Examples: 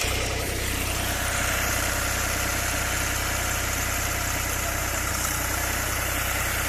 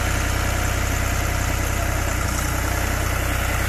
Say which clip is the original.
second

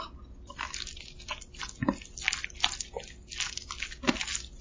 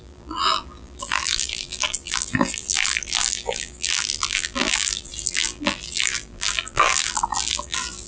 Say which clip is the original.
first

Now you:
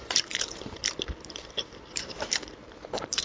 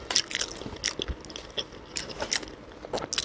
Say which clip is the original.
second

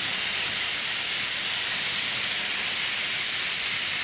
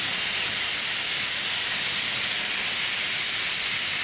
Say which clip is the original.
second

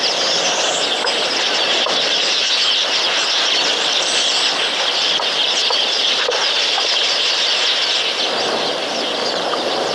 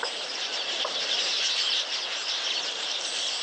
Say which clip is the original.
first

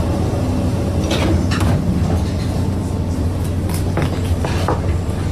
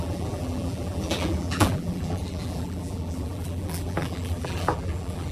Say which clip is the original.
first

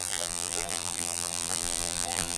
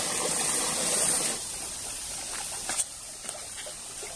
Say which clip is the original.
second